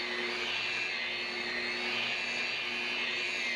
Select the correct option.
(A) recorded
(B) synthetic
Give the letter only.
A